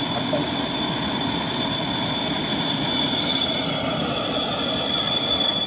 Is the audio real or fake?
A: real